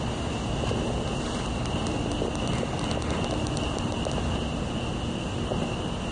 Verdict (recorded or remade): recorded